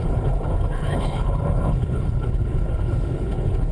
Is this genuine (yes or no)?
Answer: no